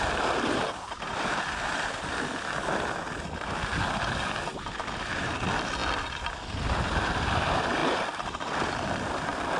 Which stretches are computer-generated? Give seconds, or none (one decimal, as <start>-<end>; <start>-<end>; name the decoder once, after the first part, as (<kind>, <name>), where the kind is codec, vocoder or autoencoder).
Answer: none